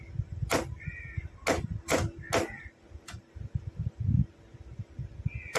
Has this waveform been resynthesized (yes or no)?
no